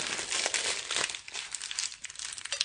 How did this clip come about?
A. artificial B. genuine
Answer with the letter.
B